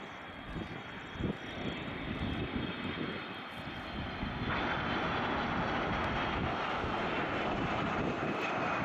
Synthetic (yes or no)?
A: no